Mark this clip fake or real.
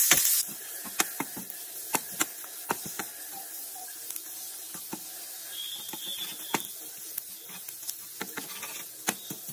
real